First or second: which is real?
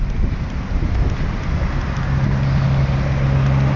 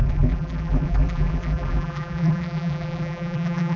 first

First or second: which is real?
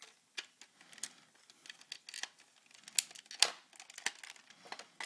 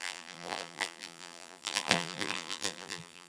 first